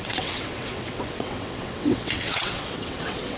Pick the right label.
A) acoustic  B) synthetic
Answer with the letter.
B